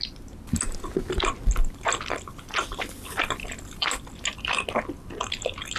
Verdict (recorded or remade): recorded